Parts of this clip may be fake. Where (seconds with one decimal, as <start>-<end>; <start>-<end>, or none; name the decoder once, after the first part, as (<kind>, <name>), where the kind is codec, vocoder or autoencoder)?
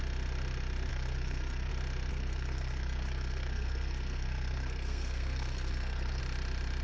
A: 0.9-1.7 (codec, SNAC); 2.1-6.2